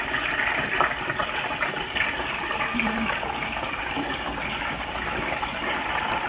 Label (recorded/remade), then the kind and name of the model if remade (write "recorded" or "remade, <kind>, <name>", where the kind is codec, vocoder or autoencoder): recorded